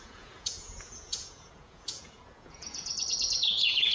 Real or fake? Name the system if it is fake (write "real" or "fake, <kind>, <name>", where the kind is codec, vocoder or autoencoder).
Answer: fake, vocoder, Vocos